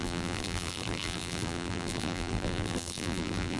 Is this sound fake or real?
fake